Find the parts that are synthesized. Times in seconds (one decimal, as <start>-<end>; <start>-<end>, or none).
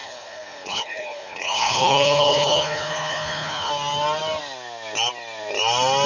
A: 0.0-3.7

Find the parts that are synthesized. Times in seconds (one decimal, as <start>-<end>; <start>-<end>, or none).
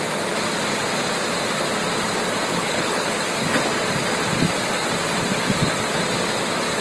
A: 2.5-3.1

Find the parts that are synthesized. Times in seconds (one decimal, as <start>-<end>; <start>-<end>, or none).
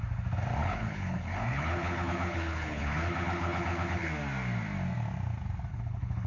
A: 0.6-4.1; 5.7-6.3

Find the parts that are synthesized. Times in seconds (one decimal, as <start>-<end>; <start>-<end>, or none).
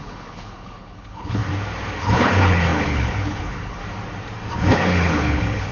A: 0.0-1.4; 2.0-3.8; 4.7-5.7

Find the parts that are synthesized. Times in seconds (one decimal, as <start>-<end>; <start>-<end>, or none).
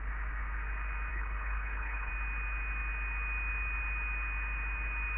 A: 1.1-2.1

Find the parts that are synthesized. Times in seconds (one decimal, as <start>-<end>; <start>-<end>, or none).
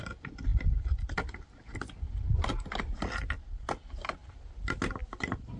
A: none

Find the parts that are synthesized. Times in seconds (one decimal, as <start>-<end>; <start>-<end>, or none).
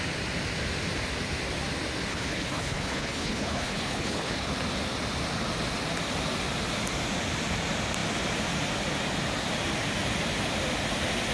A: 2.1-4.5